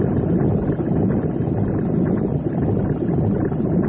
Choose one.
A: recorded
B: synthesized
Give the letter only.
A